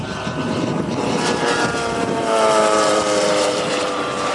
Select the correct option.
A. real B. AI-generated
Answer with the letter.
B